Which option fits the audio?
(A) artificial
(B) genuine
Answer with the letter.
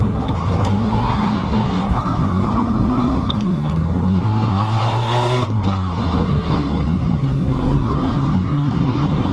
A